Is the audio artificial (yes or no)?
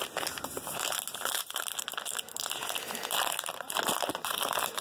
no